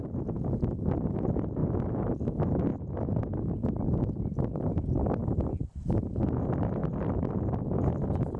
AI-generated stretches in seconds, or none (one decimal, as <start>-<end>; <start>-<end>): 0.0-2.7; 3.2-8.4